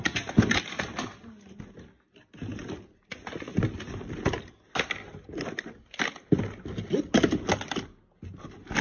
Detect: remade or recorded recorded